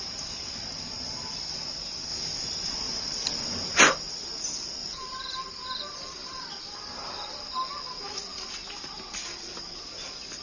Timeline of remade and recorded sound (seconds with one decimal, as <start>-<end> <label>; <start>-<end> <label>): 0.0-4.8 recorded; 4.8-6.6 remade; 6.6-10.4 recorded